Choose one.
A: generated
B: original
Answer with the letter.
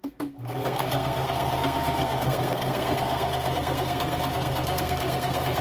A